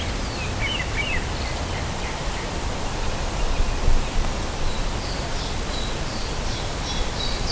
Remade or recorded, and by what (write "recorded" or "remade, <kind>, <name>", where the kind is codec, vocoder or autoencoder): recorded